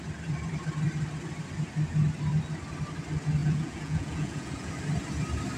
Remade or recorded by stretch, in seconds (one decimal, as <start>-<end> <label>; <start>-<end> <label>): 0.0-3.4 recorded; 3.4-4.7 remade; 4.7-5.6 recorded